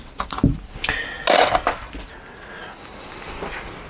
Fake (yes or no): no